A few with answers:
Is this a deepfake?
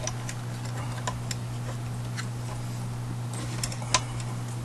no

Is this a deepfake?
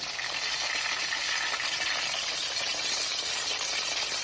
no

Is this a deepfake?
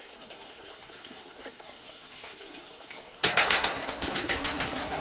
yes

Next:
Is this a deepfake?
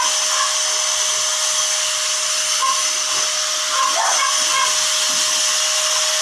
no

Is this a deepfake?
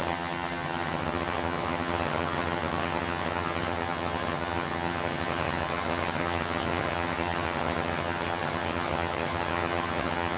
yes